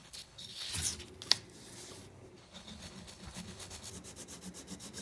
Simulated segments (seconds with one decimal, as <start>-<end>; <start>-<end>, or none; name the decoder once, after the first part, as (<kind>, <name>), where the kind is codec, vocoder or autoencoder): 0.0-0.7 (codec, HILCodec); 2.4-3.9